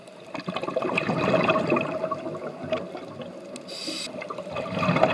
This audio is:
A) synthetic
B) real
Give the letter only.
B